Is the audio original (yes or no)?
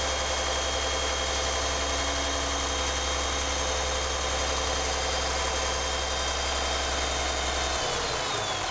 yes